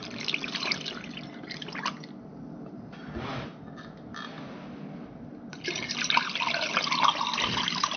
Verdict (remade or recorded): recorded